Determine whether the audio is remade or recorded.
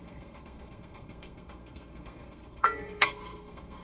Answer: remade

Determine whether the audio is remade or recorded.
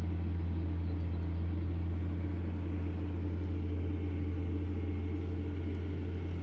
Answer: recorded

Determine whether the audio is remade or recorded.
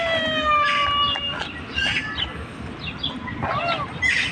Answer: recorded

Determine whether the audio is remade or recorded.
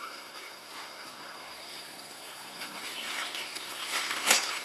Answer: remade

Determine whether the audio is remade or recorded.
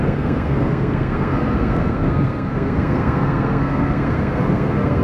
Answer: remade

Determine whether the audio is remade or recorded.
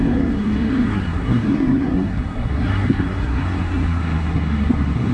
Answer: remade